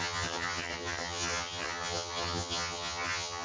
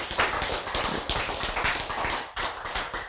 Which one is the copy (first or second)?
first